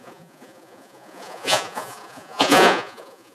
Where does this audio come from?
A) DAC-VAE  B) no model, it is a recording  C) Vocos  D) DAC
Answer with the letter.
C